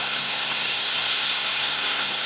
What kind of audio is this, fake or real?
fake